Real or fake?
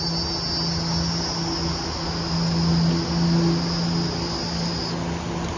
real